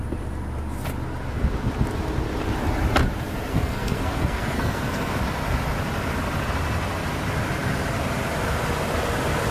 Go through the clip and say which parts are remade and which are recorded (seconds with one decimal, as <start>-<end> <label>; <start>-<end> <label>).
0.0-3.5 recorded; 3.5-5.2 remade; 5.2-9.5 recorded

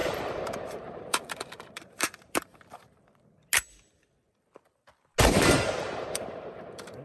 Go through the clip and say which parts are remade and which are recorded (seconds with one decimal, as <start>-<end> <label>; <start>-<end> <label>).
0.0-2.5 remade; 2.5-5.8 recorded; 5.8-7.0 remade

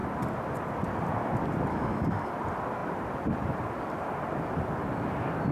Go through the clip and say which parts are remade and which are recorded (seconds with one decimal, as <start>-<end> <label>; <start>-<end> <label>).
0.0-1.7 recorded; 1.7-2.3 remade; 2.3-5.5 recorded

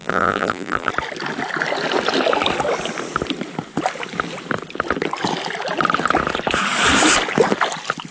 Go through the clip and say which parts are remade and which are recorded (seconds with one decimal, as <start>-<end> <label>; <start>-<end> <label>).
0.0-0.9 remade; 0.9-8.1 recorded

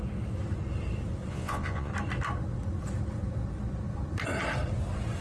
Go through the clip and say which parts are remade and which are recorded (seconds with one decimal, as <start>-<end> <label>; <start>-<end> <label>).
0.0-1.3 recorded; 1.3-1.9 remade; 1.9-5.2 recorded